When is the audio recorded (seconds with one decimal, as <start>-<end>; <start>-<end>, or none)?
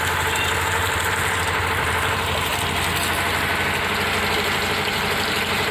2.5-4.3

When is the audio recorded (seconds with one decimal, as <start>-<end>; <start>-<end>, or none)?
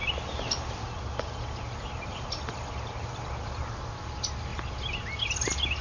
0.0-5.8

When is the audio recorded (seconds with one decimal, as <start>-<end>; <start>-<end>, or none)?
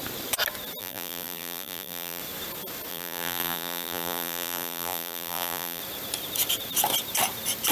0.0-0.8; 2.2-2.9; 5.8-7.7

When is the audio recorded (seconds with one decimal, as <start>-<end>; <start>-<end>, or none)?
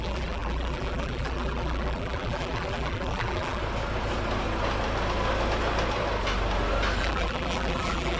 3.6-7.0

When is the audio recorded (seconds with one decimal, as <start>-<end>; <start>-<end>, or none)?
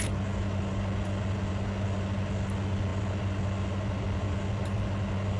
0.0-5.4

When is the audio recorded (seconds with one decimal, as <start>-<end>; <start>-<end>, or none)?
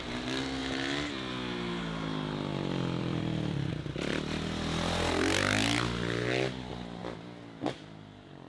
0.0-2.5; 3.7-8.5